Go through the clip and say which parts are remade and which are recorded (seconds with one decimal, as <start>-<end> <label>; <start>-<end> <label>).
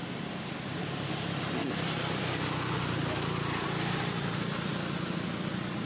0.0-5.9 recorded